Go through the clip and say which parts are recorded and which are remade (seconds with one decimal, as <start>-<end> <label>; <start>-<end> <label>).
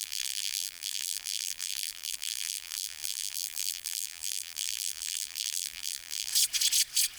0.0-6.3 remade; 6.3-7.2 recorded